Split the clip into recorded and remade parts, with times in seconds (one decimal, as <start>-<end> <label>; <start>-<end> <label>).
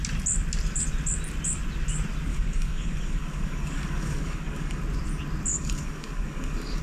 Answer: 0.0-2.3 recorded; 2.3-4.8 remade; 4.8-5.5 recorded; 5.5-6.8 remade